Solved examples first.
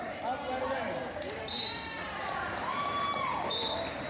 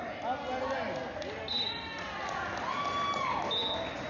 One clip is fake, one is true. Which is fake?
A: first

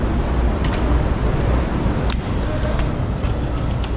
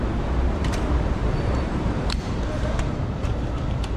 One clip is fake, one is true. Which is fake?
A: second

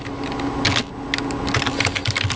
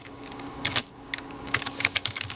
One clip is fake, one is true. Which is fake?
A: second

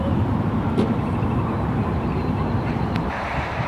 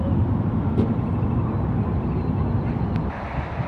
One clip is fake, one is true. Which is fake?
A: first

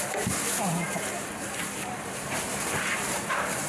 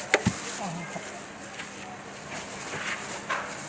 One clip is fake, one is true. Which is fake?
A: first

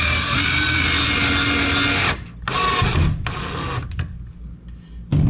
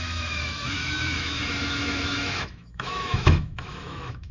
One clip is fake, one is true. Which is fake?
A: second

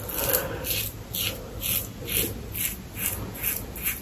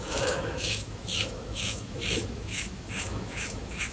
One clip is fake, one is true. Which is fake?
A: second